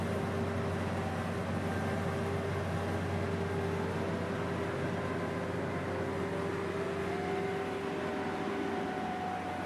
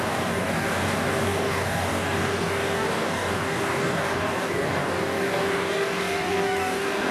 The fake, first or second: second